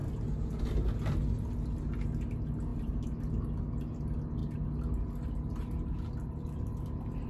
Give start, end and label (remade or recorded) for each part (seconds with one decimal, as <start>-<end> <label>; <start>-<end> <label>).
0.0-2.7 recorded; 2.7-3.3 remade; 3.3-7.3 recorded